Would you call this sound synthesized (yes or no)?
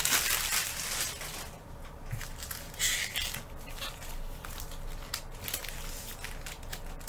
no